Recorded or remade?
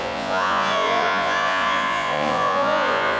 remade